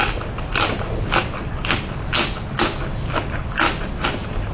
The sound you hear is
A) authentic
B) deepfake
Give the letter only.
A